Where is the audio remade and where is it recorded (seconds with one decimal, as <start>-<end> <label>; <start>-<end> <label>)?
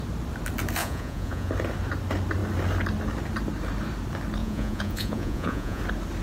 0.0-0.8 recorded; 0.8-1.5 remade; 1.5-4.4 recorded; 4.4-5.8 remade; 5.8-6.2 recorded